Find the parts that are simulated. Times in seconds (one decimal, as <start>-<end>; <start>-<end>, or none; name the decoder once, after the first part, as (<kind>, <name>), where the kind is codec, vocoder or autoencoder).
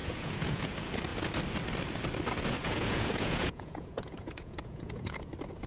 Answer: 0.0-0.7 (vocoder, Vocos); 2.6-5.3